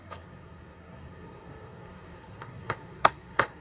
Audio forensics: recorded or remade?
remade